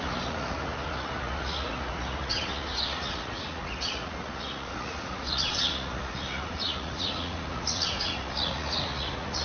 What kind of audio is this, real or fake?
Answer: fake